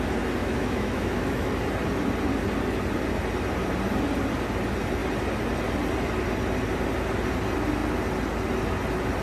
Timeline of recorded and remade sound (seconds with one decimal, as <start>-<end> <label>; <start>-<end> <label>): 0.0-0.4 recorded; 0.4-1.5 remade; 1.5-9.2 recorded